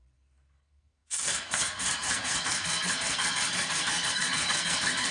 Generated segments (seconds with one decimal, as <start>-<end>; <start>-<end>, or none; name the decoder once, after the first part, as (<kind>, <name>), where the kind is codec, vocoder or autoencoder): 0.0-5.1 (codec, SNAC)